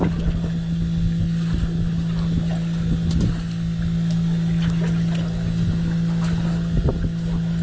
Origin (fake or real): real